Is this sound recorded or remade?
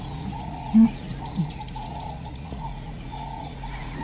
remade